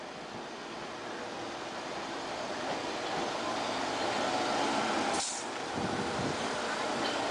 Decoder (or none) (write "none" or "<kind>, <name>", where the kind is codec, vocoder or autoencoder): none